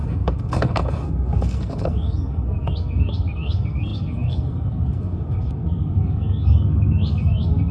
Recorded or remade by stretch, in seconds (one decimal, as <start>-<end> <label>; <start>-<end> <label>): 0.0-7.7 remade